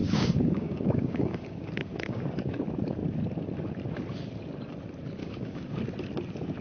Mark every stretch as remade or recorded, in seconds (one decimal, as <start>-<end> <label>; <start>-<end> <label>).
0.0-2.5 remade; 2.5-5.2 recorded; 5.2-5.8 remade; 5.8-6.6 recorded